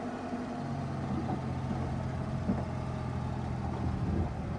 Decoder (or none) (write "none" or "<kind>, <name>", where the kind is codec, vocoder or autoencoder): none